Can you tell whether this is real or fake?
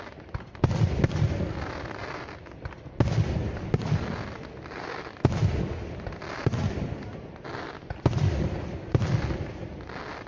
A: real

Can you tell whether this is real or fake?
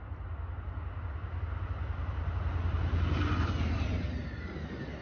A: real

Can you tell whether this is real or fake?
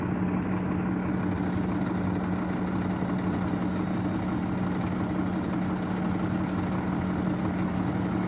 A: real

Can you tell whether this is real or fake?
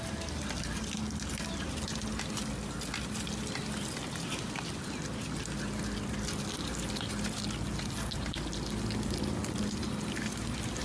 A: real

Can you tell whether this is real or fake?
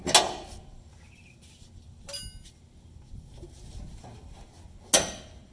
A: real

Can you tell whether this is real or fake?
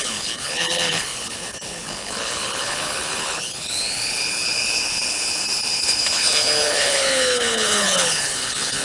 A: fake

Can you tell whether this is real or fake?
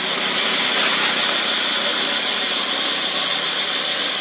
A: fake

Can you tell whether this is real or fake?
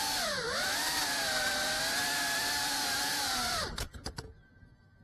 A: fake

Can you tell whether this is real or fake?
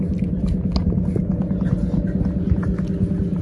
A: real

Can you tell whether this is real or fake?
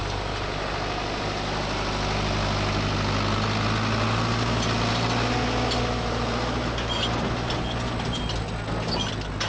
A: real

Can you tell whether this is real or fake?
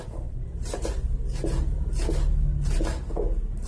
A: real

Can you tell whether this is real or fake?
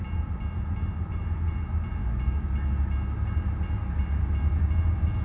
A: real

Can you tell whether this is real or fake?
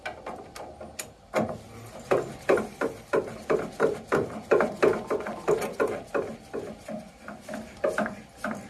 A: real